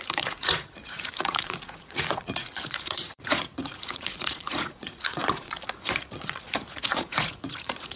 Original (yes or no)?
no